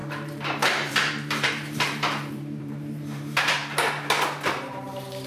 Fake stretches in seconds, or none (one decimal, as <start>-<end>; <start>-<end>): 0.0-3.6; 4.5-5.3